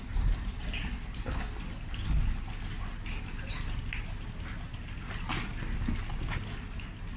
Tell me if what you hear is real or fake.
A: real